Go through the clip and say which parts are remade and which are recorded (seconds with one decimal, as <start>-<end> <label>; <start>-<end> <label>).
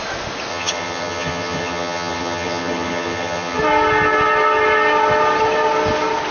0.0-0.5 recorded; 0.5-3.6 remade; 3.6-6.3 recorded